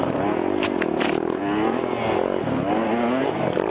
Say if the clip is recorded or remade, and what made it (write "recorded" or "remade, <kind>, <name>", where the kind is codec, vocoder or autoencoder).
recorded